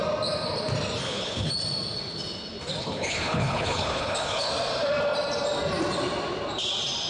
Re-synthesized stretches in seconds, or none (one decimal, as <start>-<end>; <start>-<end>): 1.0-1.5; 2.8-4.5